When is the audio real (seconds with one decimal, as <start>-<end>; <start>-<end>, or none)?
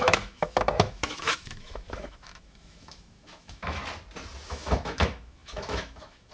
3.8-4.5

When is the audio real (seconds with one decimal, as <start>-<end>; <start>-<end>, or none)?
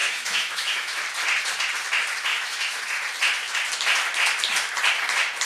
0.9-2.3; 2.8-5.4